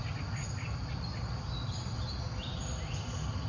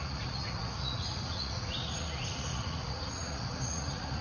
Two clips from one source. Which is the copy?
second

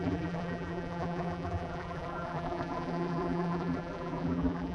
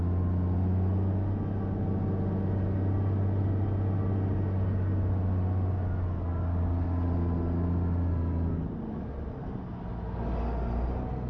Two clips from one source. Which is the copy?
first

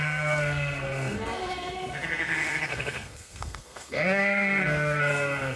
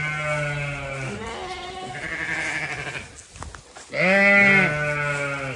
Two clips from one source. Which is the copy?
first